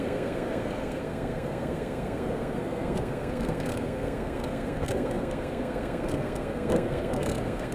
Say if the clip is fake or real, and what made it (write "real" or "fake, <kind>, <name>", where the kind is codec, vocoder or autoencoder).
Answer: fake, codec, SNAC